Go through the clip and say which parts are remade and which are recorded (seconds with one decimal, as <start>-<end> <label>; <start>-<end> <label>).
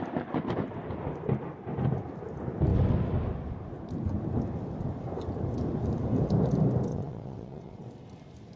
0.0-6.9 recorded; 6.9-7.9 remade; 7.9-8.6 recorded